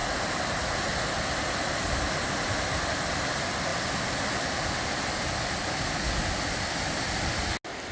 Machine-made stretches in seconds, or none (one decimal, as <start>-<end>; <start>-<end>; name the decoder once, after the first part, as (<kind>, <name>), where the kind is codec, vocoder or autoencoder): none